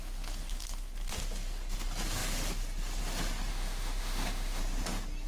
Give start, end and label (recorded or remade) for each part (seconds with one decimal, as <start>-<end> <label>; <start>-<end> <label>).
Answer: 0.0-3.5 recorded; 3.5-4.6 remade; 4.6-5.3 recorded